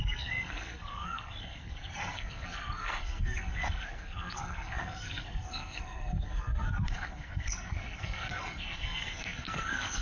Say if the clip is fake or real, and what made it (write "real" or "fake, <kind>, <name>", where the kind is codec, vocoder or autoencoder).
fake, codec, SNAC